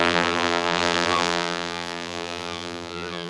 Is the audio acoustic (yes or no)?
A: no